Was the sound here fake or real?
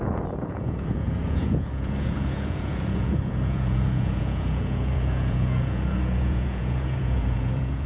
fake